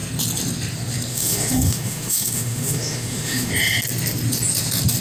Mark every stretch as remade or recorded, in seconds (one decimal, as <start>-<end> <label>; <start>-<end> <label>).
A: 0.0-1.1 recorded; 1.1-3.5 remade; 3.5-5.0 recorded